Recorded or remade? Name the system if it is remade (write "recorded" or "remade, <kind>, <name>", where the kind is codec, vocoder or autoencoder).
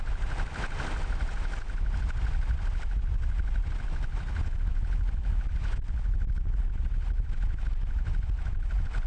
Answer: recorded